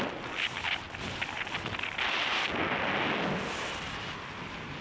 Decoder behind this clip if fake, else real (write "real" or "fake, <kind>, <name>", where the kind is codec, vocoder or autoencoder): real